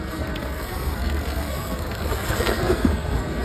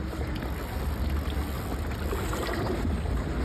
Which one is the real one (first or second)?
second